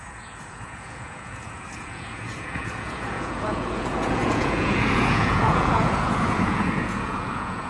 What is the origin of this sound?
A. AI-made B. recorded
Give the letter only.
A